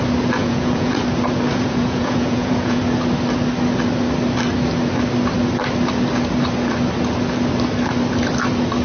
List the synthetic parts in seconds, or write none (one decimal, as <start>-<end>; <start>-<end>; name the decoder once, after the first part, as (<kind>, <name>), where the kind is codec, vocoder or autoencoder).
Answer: 0.4-0.9 (vocoder, Vocos); 1.5-2.8